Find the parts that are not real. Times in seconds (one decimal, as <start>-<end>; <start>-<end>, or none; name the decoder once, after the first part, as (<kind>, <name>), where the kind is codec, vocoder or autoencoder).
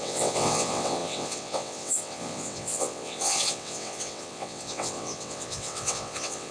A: 0.0-6.5 (vocoder, WaveNeXt)